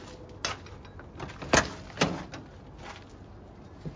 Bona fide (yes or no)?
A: yes